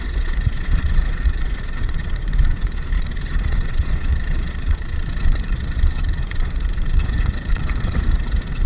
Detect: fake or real fake